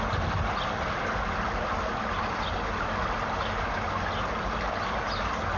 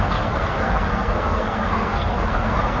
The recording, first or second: first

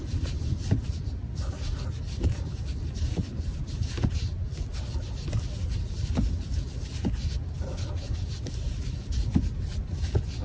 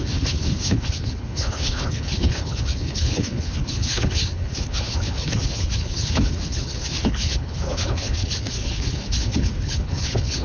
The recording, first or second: first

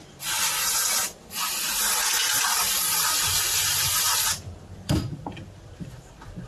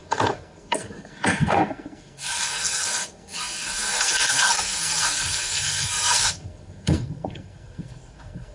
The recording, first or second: first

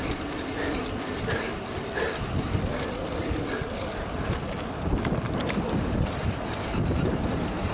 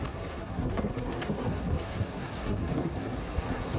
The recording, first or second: first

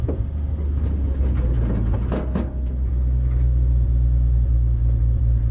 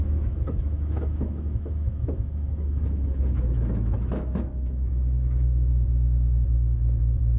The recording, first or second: first